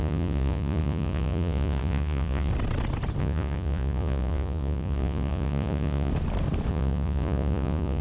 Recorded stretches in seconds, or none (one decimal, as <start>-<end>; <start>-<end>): 2.5-3.2; 6.1-6.7

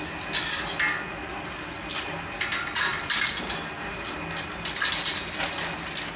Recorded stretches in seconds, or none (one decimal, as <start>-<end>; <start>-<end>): 0.0-6.2

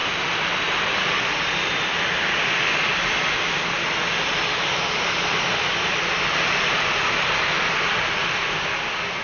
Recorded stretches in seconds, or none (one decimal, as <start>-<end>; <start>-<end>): 0.0-9.2

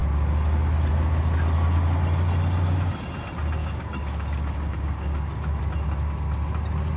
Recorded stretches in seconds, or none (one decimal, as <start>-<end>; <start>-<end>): 0.0-3.6; 5.6-7.0

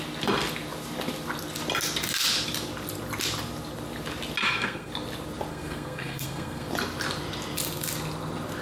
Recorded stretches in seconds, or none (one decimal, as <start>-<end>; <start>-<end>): 0.0-4.4; 4.9-5.5; 6.7-8.6

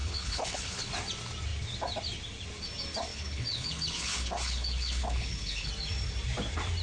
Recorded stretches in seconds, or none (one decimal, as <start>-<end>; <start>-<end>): 0.9-3.1; 5.7-6.8

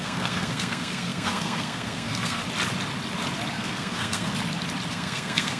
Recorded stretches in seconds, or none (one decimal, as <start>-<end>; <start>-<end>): 2.4-3.5; 4.3-4.9